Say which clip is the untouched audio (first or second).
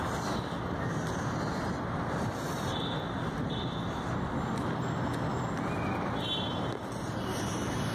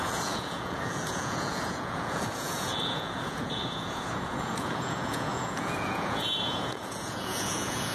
first